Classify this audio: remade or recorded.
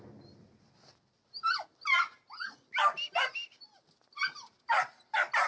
recorded